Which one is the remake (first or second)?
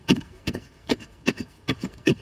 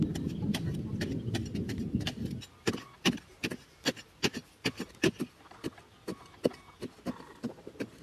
first